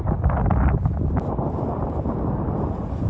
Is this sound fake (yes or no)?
no